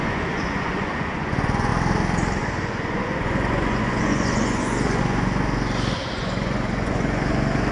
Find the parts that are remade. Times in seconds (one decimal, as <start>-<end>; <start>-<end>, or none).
0.0-1.7; 2.4-7.7